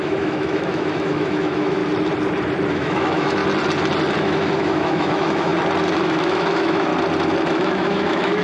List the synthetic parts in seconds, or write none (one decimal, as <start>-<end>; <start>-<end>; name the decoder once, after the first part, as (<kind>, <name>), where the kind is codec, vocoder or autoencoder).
0.0-1.8 (autoencoder, DAC-VAE); 2.7-3.4; 4.2-5.5; 6.0-6.9; 7.4-8.4